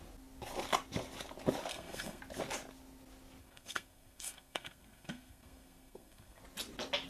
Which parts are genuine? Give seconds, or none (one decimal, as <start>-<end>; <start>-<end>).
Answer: 0.0-1.7; 2.2-3.4; 6.4-7.1